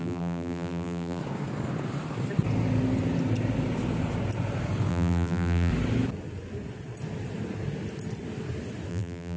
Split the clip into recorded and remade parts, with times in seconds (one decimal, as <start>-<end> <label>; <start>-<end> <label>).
0.0-1.2 remade; 1.2-4.9 recorded; 4.9-5.7 remade; 5.7-8.9 recorded; 8.9-9.4 remade